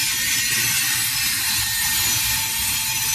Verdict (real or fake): real